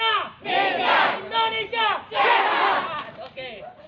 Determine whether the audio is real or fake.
real